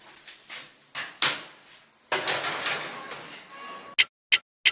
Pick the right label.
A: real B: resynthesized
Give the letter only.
A